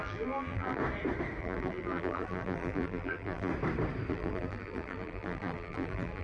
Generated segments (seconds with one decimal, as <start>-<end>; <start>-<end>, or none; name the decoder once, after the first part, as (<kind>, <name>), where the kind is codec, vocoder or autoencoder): 0.0-0.8 (vocoder, BigVGAN v2); 1.4-3.5; 4.1-6.2